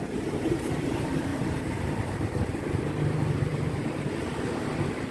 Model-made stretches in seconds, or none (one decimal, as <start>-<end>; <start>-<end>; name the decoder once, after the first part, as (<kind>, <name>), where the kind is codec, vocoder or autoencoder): 0.0-5.1 (vocoder, BigVGAN v2)